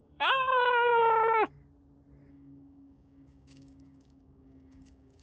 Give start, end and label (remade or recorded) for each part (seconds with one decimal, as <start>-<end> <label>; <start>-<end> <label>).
0.0-0.9 remade; 0.9-2.3 recorded; 2.3-5.2 remade

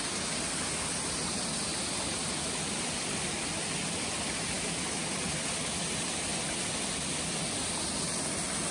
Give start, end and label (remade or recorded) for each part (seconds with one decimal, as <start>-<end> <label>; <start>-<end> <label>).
0.0-8.7 recorded

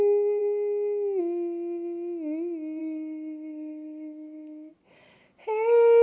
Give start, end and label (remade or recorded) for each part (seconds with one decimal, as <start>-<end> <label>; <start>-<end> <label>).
0.0-2.8 recorded; 2.8-4.7 remade; 4.7-6.0 recorded

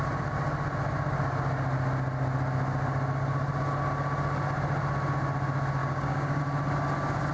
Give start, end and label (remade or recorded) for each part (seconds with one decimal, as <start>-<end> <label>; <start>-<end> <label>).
0.0-5.8 recorded; 5.8-6.4 remade; 6.4-7.3 recorded

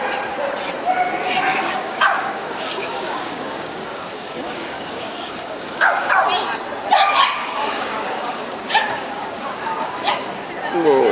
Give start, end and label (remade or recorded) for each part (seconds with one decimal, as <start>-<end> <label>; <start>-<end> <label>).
0.0-1.5 recorded; 1.5-6.1 remade; 6.1-7.4 recorded; 7.4-10.1 remade; 10.1-11.1 recorded

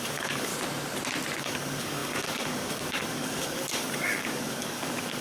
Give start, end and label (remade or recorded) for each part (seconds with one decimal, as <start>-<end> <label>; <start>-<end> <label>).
0.0-0.5 remade; 0.5-1.4 recorded; 1.4-5.2 remade

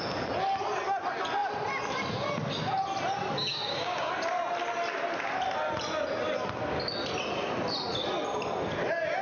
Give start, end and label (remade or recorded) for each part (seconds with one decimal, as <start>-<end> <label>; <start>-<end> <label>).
0.0-3.5 recorded; 3.5-4.1 remade; 4.1-9.2 recorded